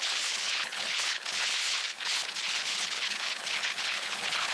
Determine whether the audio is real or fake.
fake